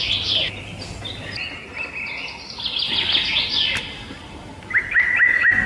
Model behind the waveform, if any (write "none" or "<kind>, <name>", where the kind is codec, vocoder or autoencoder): none